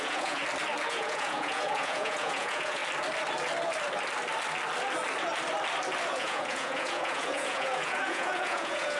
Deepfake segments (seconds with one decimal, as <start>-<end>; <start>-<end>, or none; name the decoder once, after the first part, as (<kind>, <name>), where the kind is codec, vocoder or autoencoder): 0.0-0.4 (vocoder, Vocos); 0.9-2.8; 6.1-9.0